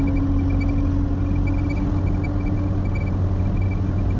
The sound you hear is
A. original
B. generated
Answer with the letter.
A